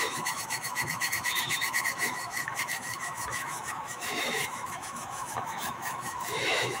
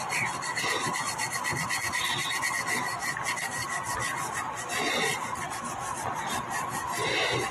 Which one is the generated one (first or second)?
first